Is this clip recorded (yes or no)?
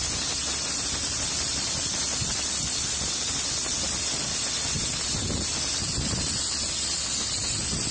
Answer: yes